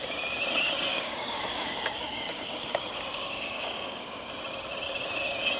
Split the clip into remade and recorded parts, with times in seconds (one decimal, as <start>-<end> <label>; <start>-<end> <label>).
0.0-0.9 recorded; 0.9-4.3 remade; 4.3-5.6 recorded